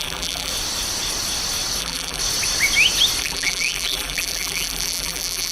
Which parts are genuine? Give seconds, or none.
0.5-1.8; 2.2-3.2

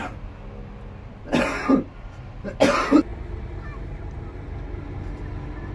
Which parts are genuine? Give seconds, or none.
0.0-5.7

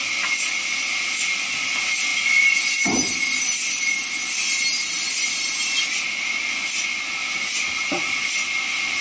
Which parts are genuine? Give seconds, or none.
0.0-2.1; 4.3-9.0

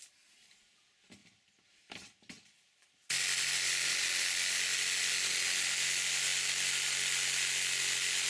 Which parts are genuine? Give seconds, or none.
0.0-1.2; 4.0-8.3

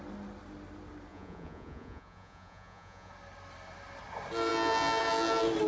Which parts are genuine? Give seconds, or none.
0.0-1.1; 3.1-5.7